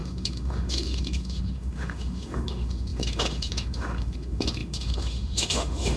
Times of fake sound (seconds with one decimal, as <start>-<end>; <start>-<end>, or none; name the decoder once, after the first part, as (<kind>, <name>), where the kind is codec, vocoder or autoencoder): 0.0-6.0 (autoencoder, DAC-VAE)